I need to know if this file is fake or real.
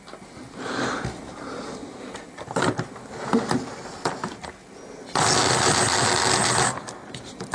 real